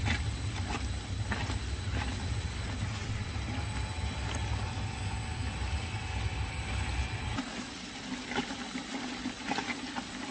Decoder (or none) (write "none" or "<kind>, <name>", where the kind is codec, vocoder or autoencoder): none